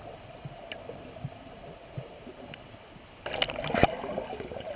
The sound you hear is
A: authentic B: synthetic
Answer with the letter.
A